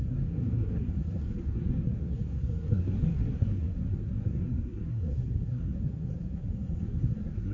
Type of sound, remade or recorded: remade